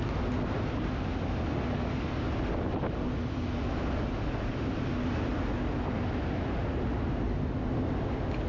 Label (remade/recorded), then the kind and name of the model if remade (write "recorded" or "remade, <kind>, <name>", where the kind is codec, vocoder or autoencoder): recorded